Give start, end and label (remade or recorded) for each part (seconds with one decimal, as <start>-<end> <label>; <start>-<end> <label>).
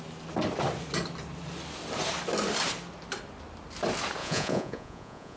0.0-4.2 recorded; 4.2-5.4 remade